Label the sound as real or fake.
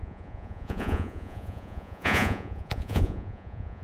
fake